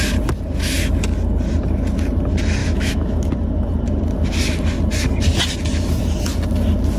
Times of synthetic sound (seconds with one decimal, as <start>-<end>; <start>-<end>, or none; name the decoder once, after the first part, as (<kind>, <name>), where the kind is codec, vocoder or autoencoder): 2.6-3.3 (autoencoder, DAC-VAE)